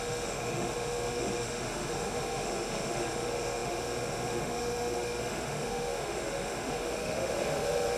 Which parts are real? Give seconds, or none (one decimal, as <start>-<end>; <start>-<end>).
none